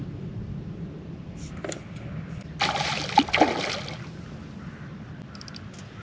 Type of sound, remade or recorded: recorded